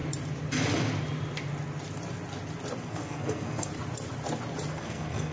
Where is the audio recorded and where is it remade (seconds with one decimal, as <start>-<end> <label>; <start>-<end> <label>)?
0.0-2.8 recorded; 2.8-3.7 remade; 3.7-4.7 recorded; 4.7-5.3 remade